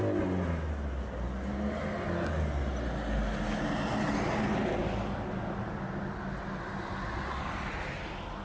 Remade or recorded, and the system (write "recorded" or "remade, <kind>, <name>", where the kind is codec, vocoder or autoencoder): recorded